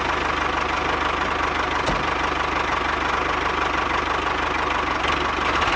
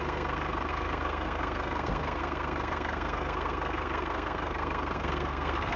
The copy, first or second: second